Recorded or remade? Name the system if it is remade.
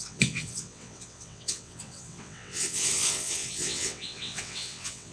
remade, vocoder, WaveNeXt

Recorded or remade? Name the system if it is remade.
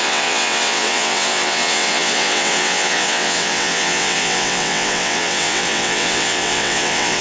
remade, vocoder, WaveNeXt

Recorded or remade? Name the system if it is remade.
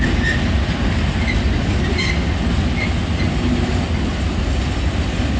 recorded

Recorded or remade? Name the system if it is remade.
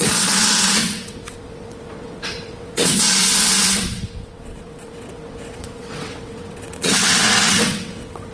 remade, vocoder, WaveNeXt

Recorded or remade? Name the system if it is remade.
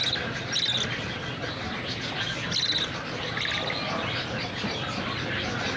recorded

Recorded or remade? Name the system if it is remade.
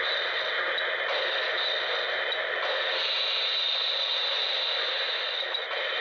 recorded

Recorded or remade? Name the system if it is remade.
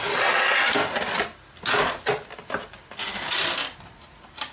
recorded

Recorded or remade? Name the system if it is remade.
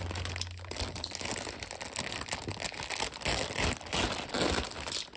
recorded